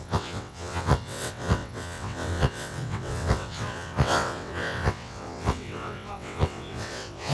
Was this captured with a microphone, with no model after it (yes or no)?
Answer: no